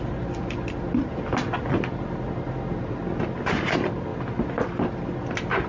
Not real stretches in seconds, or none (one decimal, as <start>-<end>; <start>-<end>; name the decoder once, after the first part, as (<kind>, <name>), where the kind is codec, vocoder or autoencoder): none